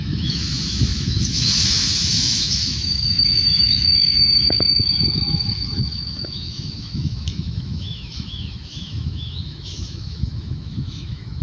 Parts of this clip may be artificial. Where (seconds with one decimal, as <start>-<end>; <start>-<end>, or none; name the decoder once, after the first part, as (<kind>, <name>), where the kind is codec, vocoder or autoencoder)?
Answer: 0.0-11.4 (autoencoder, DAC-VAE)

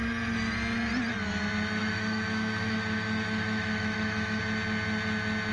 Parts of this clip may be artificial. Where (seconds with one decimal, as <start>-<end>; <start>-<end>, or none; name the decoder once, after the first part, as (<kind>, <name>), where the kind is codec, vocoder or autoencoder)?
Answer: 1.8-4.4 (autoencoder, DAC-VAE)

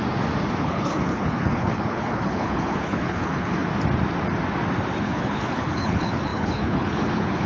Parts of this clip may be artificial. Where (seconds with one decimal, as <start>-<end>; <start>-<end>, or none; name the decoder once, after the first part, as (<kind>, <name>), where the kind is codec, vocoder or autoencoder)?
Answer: 0.6-3.7 (codec, HILCodec); 5.0-7.5

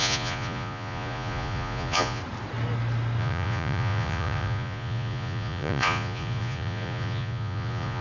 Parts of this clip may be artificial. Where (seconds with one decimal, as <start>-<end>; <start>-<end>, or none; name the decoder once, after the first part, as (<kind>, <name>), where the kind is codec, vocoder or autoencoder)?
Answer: 0.0-2.2 (vocoder, Vocos); 3.2-8.0

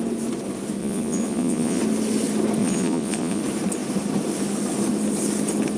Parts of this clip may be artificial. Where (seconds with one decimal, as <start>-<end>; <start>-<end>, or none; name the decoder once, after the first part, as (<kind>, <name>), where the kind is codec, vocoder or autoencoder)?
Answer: 0.8-1.8 (vocoder, Vocos); 2.6-3.4

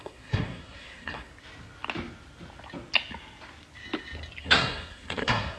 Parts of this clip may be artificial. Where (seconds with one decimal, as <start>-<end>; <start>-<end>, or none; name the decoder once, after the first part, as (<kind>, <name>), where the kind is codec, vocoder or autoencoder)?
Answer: 0.0-1.3 (codec, SNAC); 4.4-5.6